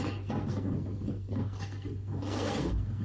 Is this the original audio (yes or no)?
no